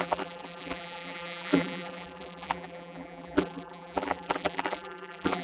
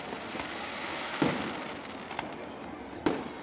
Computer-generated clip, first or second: first